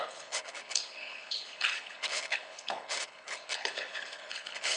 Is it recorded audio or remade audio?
remade